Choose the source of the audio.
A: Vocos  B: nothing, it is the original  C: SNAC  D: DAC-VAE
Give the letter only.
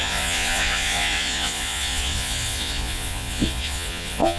A